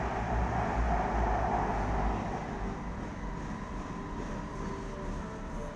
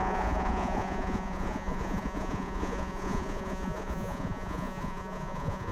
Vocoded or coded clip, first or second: second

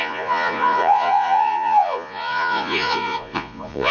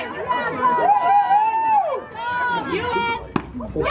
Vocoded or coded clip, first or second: first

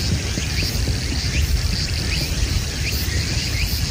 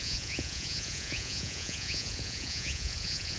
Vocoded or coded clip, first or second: second